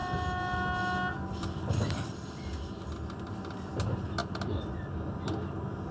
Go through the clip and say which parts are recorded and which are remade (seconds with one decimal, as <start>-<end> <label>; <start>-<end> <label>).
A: 0.0-4.2 recorded; 4.2-4.8 remade; 4.8-5.9 recorded